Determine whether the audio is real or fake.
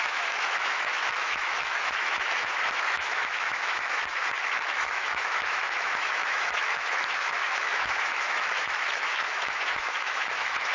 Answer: fake